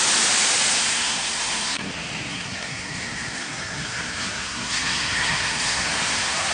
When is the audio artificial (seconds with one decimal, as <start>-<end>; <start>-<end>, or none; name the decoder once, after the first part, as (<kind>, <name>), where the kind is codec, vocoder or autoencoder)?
0.7-1.9 (codec, SNAC); 2.3-6.5